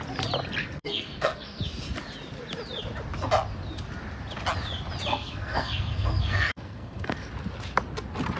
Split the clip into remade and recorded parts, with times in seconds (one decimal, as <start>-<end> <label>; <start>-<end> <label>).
0.0-0.6 recorded; 0.6-1.6 remade; 1.6-5.1 recorded; 5.1-7.3 remade; 7.3-8.4 recorded

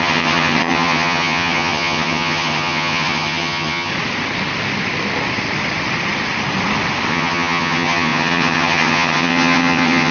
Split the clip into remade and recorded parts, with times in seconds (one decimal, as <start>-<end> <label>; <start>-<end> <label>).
0.0-3.9 remade; 3.9-7.1 recorded; 7.1-10.1 remade

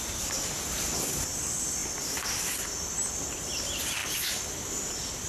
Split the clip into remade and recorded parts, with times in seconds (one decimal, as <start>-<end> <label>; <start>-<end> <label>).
0.0-1.8 remade; 1.8-3.5 recorded; 3.5-4.0 remade; 4.0-4.6 recorded; 4.6-5.3 remade

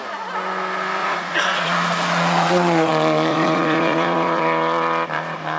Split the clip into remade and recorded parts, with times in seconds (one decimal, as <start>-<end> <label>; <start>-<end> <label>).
0.0-1.0 recorded; 1.0-2.9 remade; 2.9-3.3 recorded; 3.3-4.4 remade; 4.4-5.6 recorded

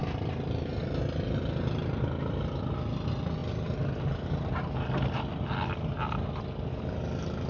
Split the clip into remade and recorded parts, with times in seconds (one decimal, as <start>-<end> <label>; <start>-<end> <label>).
0.0-7.5 recorded

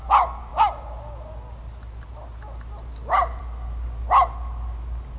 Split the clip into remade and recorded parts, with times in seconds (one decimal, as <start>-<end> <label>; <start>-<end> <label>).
0.0-5.2 recorded

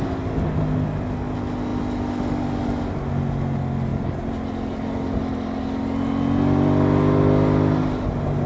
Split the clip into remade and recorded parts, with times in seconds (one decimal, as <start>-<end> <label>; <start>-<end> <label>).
0.0-8.5 recorded

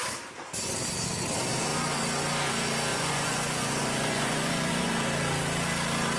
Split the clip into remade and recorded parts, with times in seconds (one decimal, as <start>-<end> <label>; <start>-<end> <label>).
0.0-2.9 recorded; 2.9-4.9 remade; 4.9-6.2 recorded